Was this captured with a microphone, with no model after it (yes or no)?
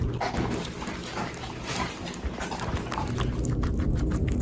yes